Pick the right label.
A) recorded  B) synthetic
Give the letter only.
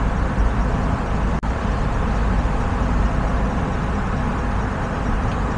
A